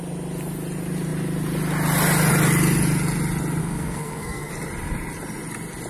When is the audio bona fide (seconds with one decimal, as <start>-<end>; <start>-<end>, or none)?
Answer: 0.0-3.6; 4.5-5.9